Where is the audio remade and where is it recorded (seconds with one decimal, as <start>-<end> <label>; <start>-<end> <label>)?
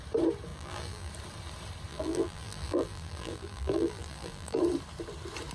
0.0-0.5 recorded; 0.5-1.1 remade; 1.1-1.9 recorded; 1.9-4.6 remade; 4.6-5.5 recorded